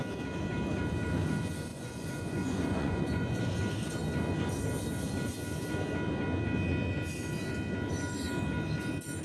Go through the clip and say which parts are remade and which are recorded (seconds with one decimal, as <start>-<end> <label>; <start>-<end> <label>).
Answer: 0.0-1.7 recorded; 1.7-3.4 remade; 3.4-9.2 recorded